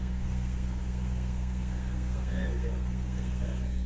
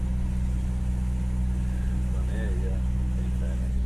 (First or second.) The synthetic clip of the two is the first